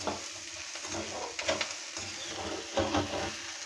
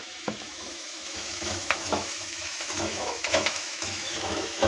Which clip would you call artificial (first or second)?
second